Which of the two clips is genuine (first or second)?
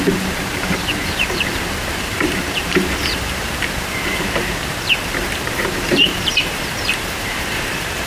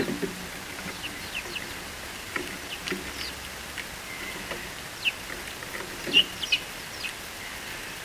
second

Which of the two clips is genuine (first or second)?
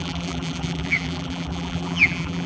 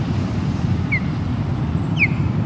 second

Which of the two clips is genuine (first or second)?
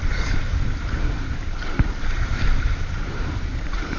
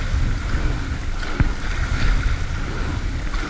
second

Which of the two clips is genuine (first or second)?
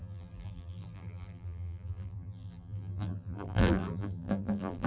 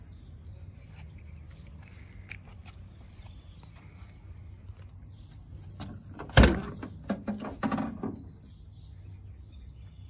second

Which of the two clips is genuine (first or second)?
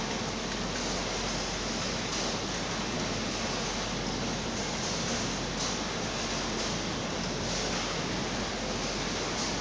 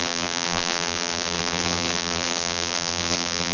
first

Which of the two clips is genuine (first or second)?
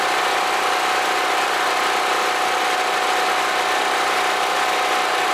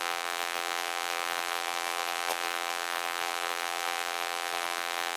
first